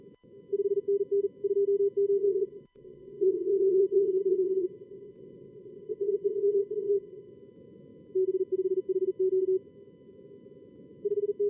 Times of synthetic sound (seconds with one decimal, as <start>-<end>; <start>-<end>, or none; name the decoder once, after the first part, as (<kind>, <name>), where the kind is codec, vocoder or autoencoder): 2.2-7.3 (vocoder, WaveNeXt)